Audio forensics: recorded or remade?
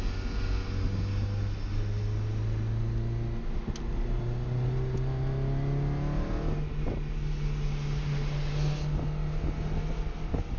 recorded